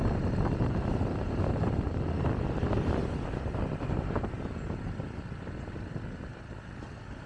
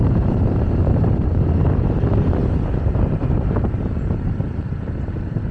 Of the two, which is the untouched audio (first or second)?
first